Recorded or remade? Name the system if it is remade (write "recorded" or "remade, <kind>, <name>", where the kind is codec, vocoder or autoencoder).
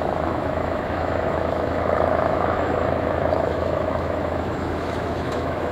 remade, autoencoder, DAC-VAE